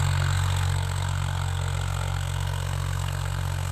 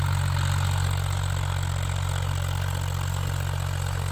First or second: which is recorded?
second